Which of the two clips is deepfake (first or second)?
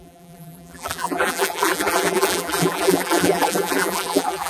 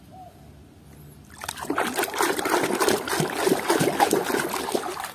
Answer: first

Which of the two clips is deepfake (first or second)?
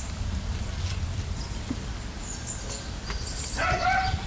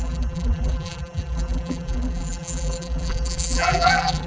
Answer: second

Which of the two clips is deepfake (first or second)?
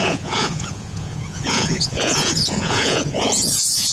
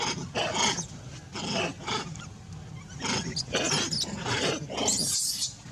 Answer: first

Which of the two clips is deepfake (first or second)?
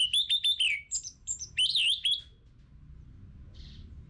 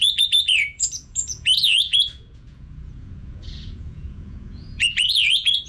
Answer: second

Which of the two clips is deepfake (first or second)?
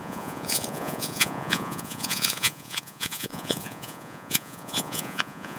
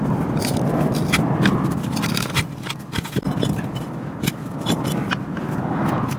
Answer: first